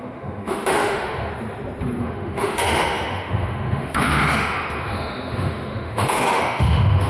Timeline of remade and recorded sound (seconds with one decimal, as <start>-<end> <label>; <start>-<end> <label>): 0.0-1.3 remade; 1.3-2.0 recorded; 2.0-7.1 remade